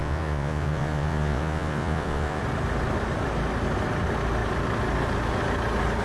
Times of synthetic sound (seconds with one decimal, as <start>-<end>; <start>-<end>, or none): 0.0-2.4